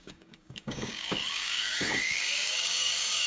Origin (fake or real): fake